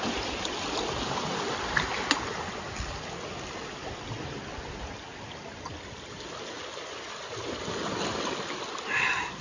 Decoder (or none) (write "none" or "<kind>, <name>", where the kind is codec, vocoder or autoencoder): none